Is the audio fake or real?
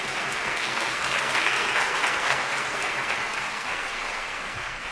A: fake